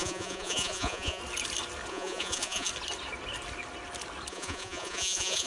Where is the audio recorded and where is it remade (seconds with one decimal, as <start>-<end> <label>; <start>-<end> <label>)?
0.0-1.2 remade; 1.2-1.9 recorded; 1.9-2.7 remade; 2.7-4.3 recorded; 4.3-5.5 remade